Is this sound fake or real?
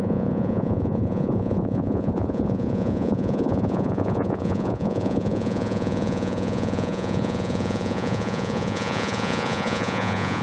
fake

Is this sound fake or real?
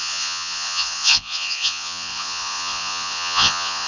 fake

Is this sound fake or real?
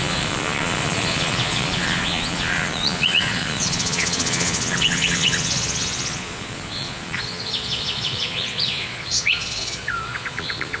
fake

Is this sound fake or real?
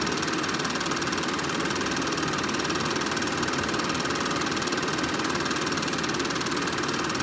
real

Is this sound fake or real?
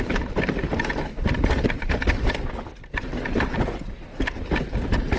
real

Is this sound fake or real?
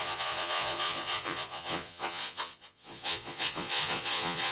fake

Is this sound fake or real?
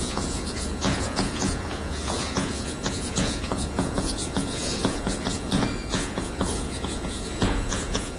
fake